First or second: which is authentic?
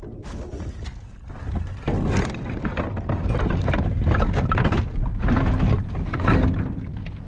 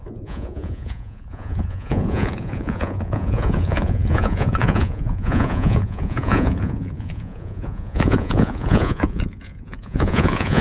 first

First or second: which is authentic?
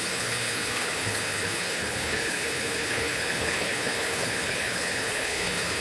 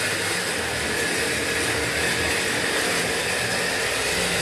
second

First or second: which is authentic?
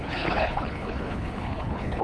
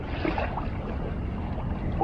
second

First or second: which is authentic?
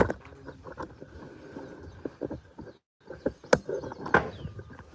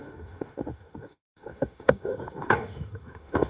first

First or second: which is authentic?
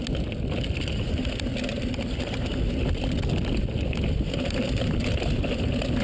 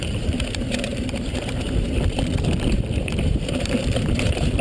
first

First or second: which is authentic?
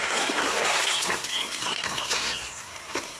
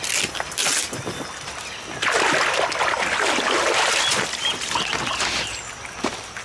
second